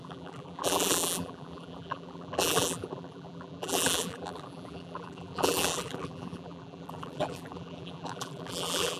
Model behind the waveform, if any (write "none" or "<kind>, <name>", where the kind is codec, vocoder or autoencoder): vocoder, BigVGAN v2